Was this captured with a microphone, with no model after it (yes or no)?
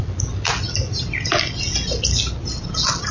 yes